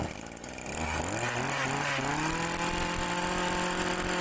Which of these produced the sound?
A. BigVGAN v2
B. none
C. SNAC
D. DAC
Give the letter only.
B